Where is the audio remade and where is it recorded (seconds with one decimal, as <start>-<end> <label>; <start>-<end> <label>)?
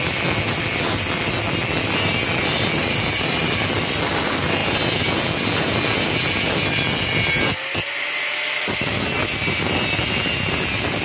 0.0-11.0 recorded